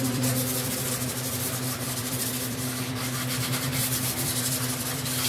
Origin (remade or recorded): remade